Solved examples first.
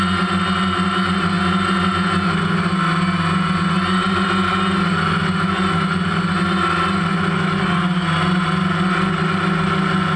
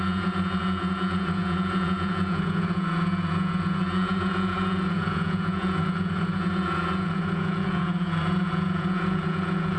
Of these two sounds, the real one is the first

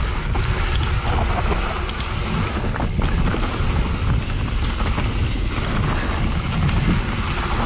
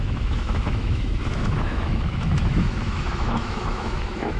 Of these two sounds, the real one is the first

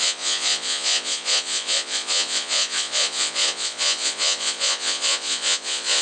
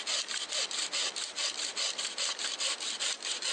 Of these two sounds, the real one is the second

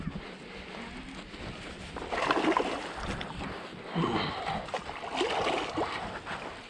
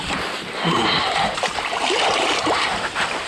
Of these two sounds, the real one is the first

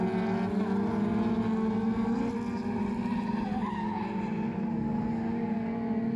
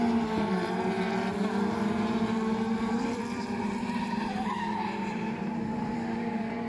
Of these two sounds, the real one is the first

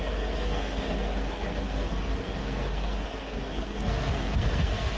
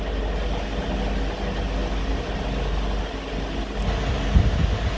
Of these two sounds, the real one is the second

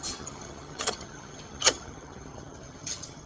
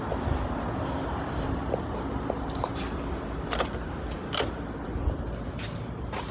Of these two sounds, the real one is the second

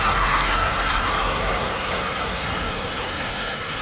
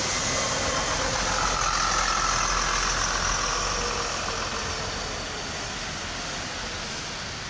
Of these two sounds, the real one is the second